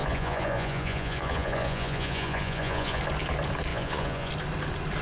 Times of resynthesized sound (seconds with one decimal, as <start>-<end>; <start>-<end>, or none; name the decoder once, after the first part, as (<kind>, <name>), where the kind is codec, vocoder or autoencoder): 0.0-3.0 (vocoder, Vocos); 3.7-4.3